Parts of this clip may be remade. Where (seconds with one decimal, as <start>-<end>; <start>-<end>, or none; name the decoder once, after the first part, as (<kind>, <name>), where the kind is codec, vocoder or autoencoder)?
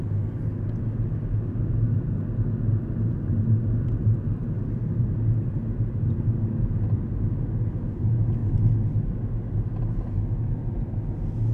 none